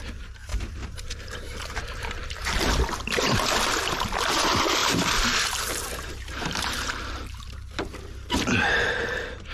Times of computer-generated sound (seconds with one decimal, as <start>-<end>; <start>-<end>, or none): 0.5-2.7; 4.8-8.3